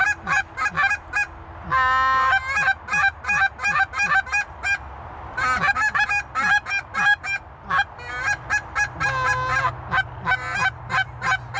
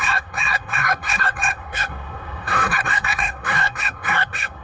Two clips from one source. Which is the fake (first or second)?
second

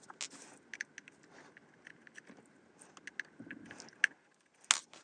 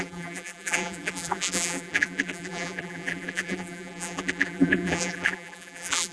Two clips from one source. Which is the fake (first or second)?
second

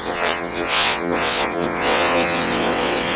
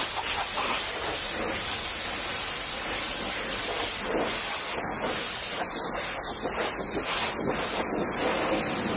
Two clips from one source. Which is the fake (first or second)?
first